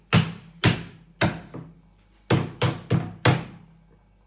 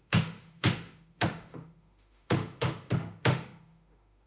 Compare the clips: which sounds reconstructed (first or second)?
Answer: second